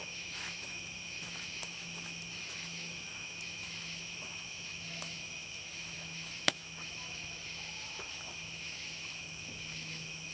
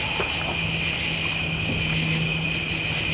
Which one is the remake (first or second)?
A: first